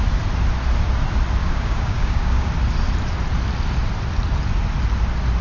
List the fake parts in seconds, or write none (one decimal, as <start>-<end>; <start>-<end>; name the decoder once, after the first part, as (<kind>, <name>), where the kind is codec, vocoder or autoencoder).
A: 1.4-2.5 (codec, DAC)